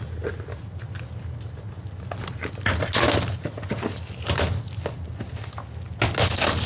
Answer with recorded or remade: recorded